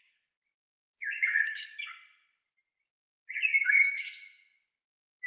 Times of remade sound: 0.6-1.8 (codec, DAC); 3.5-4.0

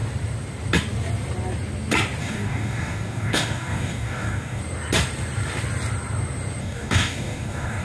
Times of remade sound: 2.2-4.6 (codec, DAC); 6.6-7.8

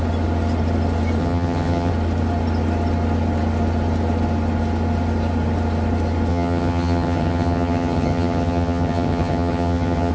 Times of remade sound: 1.2-1.9 (vocoder, HiFi-GAN); 6.3-10.1

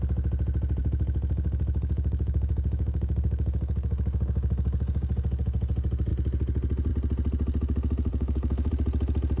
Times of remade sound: 0.8-5.4 (codec, DAC); 8.1-8.7

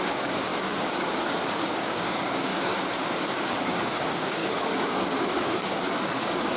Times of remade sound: 0.0-6.6 (codec, DAC)

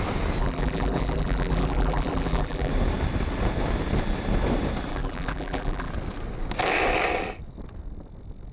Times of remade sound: 0.4-2.7 (vocoder, BigVGAN v2); 4.9-5.9

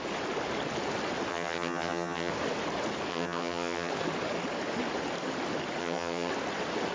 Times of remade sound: 1.3-2.3 (vocoder, HiFi-GAN); 3.1-3.9; 5.8-6.3